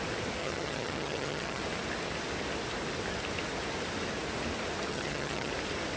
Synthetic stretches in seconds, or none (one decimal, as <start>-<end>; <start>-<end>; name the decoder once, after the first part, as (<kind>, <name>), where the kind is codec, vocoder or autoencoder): 0.4-1.6 (vocoder, HiFi-GAN); 4.9-5.5